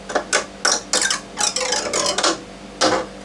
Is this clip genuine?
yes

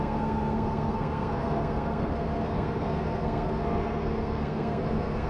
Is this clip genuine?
no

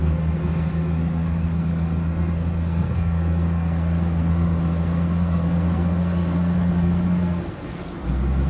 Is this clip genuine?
no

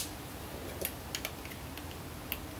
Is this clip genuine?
yes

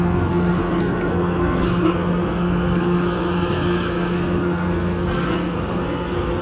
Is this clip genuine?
no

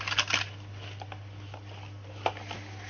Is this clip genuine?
yes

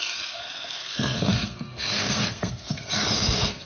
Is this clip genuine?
no